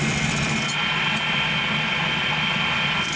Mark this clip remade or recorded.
recorded